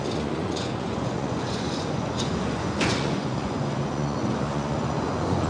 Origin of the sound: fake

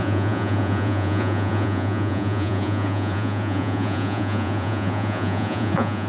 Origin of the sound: fake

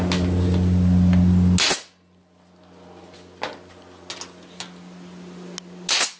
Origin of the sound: real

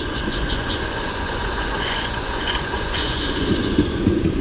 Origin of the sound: fake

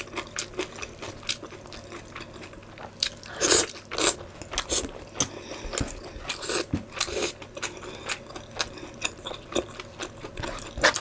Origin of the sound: real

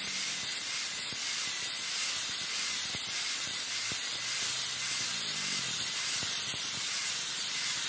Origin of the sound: real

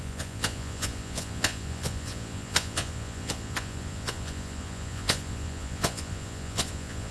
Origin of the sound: fake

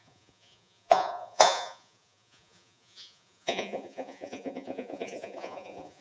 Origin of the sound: fake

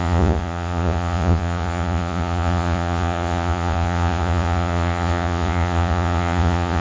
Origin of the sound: fake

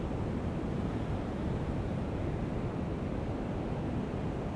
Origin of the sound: real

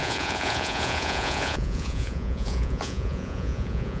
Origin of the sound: fake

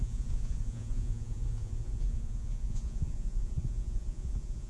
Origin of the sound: fake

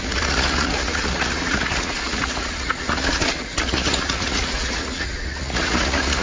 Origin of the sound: fake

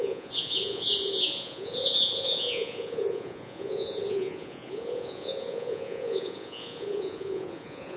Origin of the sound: fake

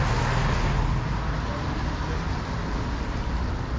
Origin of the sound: real